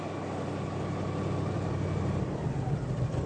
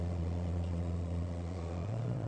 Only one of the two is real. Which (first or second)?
first